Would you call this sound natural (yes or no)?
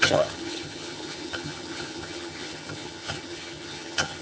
no